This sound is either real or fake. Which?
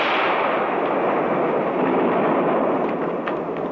fake